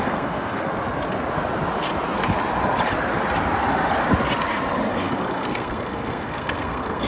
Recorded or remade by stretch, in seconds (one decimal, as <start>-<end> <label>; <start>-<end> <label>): 0.0-0.7 remade; 0.7-4.9 recorded; 4.9-7.1 remade